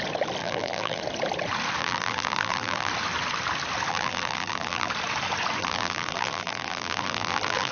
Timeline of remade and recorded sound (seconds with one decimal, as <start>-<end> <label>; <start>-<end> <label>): 0.0-0.4 recorded; 0.4-1.0 remade; 1.0-1.8 recorded; 1.8-2.9 remade; 2.9-3.9 recorded; 3.9-4.9 remade; 4.9-5.6 recorded; 5.6-7.7 remade